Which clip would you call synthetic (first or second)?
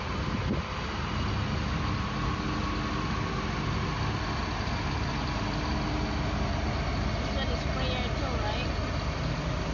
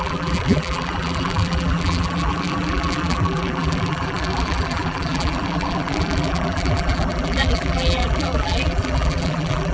second